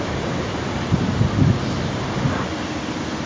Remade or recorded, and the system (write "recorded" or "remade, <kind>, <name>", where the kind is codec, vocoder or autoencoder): recorded